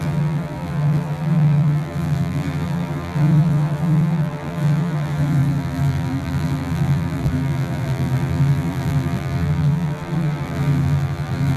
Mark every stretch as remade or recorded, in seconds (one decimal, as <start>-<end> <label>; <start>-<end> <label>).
0.0-11.6 remade